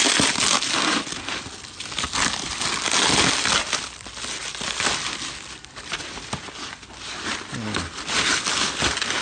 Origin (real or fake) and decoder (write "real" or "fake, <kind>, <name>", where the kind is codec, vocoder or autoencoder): real